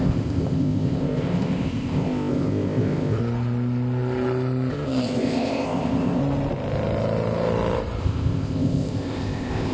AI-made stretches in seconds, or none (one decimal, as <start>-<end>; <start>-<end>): 0.0-3.2; 4.7-6.2; 8.0-9.7